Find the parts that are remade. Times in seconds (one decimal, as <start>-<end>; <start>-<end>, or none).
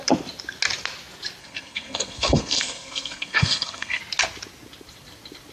1.4-4.0